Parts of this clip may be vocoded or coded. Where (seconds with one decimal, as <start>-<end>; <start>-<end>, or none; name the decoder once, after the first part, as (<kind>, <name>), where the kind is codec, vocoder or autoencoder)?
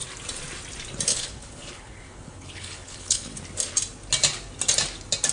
1.1-3.4 (codec, HILCodec)